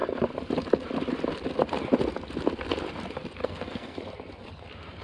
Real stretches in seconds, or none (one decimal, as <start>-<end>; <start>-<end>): 0.0-3.4; 4.0-5.0